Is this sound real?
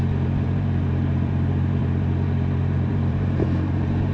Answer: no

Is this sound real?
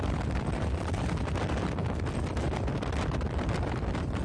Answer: no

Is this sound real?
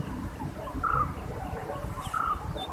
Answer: no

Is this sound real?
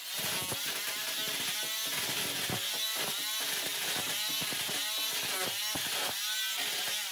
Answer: yes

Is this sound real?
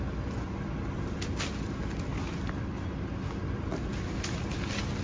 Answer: yes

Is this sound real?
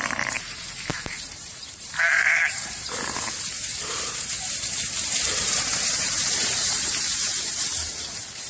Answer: no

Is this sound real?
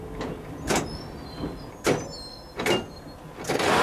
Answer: yes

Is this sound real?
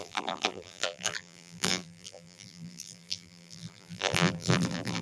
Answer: no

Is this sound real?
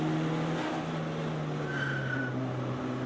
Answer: yes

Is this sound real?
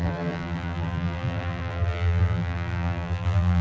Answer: no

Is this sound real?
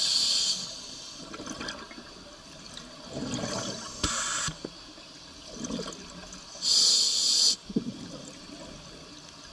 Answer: yes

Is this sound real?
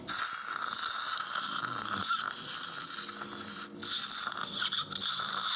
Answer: yes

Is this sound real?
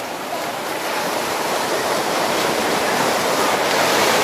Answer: no